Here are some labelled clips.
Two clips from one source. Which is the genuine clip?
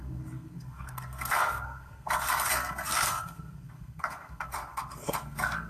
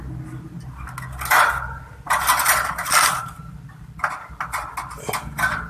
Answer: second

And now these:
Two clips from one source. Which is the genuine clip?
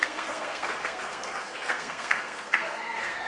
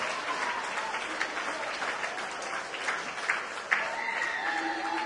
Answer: second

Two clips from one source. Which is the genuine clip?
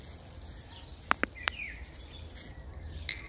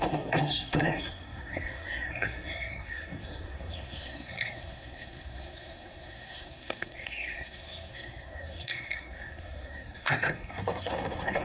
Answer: first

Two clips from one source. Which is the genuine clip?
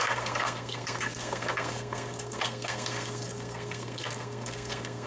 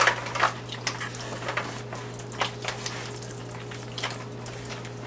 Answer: second